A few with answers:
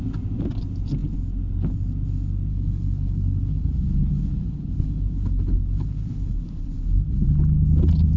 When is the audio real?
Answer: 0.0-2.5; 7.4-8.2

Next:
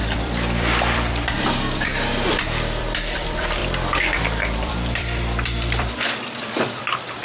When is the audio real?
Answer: none

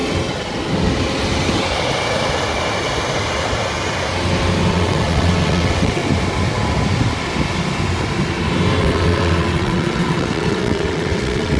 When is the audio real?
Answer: 0.0-4.7; 6.0-8.8

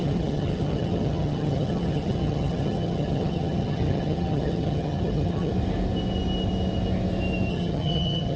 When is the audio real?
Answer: 5.5-7.5